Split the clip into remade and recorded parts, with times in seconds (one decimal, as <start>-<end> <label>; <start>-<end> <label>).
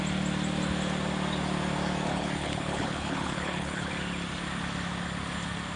0.0-2.1 recorded; 2.1-3.9 remade; 3.9-5.8 recorded